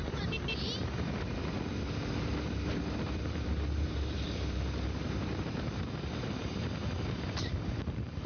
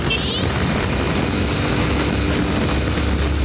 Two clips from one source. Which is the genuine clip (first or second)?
second